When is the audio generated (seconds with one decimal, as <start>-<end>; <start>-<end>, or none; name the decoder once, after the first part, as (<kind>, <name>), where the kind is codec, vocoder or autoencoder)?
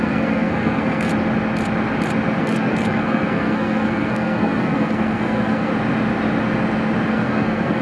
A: 0.0-1.1 (codec, SNAC); 2.4-5.7; 7.1-7.8